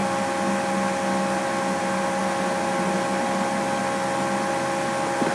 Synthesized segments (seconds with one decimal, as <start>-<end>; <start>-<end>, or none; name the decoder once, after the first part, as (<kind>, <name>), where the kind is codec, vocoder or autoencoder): none